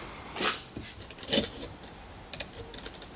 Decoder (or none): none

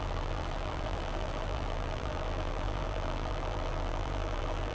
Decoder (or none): vocoder, BigVGAN v2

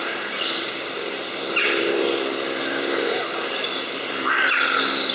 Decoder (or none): vocoder, BigVGAN v2